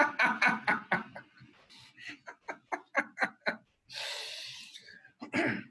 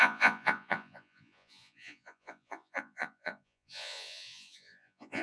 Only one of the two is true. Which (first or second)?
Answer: first